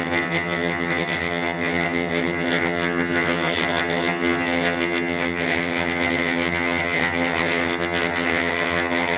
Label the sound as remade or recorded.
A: remade